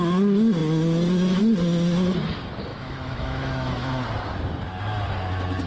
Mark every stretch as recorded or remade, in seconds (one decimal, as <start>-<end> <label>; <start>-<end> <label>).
0.0-2.7 recorded; 2.7-3.9 remade; 3.9-5.7 recorded